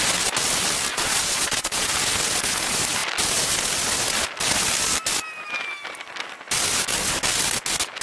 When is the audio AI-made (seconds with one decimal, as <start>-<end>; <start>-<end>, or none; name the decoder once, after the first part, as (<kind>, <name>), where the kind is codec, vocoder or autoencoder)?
0.9-1.9 (vocoder, Vocos)